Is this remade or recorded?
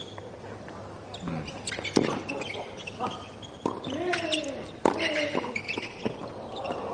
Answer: recorded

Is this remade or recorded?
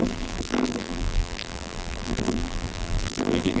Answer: remade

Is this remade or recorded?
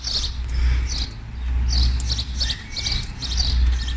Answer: recorded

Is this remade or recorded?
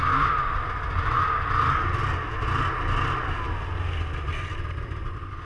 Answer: recorded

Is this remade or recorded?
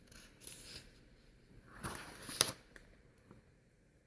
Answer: remade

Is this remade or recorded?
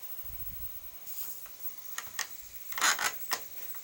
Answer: recorded